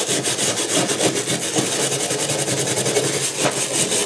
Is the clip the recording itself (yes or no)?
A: yes